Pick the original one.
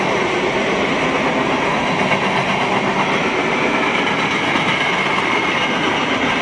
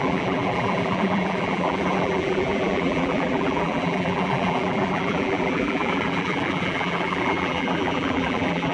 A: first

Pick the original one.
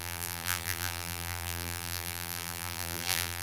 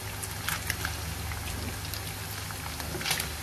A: second